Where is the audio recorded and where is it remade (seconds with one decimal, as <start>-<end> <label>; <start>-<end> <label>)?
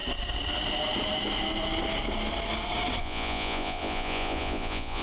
0.0-3.0 recorded; 3.0-5.0 remade